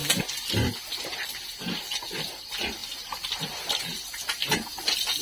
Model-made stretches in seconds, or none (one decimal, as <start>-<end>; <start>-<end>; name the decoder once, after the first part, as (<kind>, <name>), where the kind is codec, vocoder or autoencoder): none